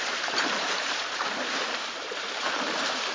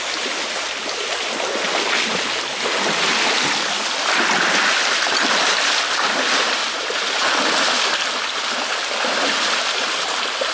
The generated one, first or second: first